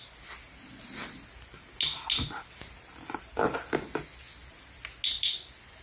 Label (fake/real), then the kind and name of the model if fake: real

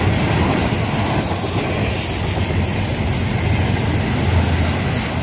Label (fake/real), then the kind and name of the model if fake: real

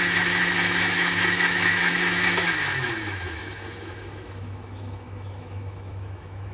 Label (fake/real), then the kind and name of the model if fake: fake, autoencoder, DAC-VAE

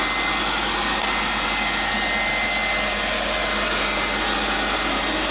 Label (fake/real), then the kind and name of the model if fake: real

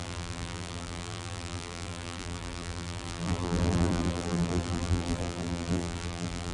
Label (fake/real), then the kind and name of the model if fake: fake, vocoder, BigVGAN v2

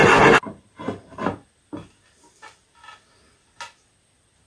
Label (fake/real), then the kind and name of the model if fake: real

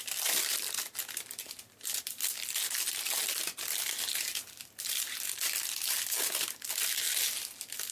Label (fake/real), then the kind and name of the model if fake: real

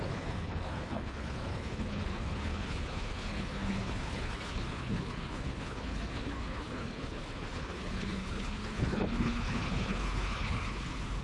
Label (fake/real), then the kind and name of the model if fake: fake, codec, HILCodec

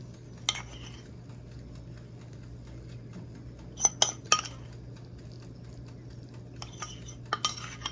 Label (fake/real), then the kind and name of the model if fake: real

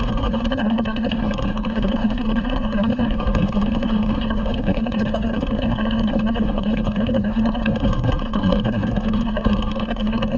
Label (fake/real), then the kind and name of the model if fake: fake, codec, SNAC